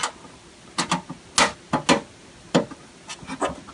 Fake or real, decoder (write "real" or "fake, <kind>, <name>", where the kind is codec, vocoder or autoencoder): real